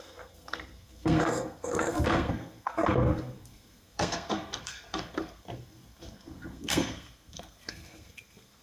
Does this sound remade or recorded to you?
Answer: remade